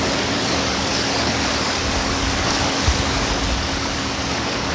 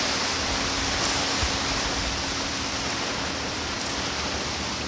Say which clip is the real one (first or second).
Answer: second